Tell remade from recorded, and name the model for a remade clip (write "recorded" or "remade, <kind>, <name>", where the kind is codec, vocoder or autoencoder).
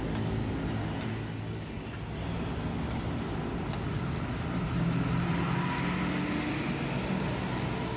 recorded